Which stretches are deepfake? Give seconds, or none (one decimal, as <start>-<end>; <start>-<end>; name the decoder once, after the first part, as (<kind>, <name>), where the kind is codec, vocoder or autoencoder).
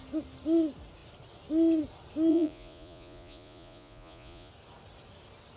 2.3-4.5 (vocoder, Vocos)